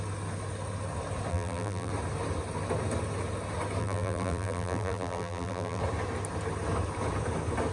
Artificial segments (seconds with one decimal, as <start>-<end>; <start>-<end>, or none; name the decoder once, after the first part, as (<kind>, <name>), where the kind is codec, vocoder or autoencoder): 1.3-1.9 (vocoder, BigVGAN v2); 3.8-5.8

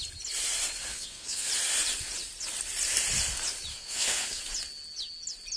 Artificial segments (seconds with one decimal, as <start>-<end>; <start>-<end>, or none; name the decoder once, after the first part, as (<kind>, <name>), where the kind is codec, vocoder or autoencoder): 0.9-1.5 (codec, SNAC); 3.7-4.4

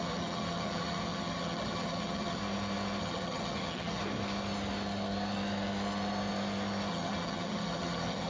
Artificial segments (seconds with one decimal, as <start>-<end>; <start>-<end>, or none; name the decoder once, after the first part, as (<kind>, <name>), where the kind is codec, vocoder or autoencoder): 0.0-2.4 (vocoder, HiFi-GAN); 3.0-4.0; 6.9-8.3

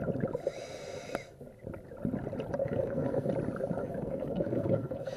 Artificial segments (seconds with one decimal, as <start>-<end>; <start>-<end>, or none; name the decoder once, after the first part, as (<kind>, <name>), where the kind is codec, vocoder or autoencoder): 2.6-3.3 (codec, SNAC); 3.8-5.2

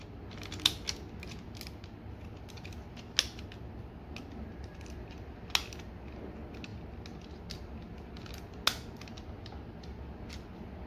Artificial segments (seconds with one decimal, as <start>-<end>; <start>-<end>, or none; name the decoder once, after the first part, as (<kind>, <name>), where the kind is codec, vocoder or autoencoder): none

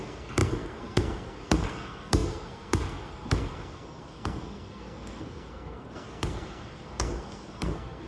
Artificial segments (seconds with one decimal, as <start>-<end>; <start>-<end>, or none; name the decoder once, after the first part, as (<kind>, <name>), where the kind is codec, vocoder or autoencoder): 0.0-8.1 (codec, SNAC)

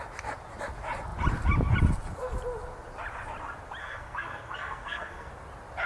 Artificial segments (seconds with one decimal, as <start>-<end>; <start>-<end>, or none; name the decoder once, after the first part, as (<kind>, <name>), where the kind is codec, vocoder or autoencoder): 3.8-5.3 (codec, SNAC)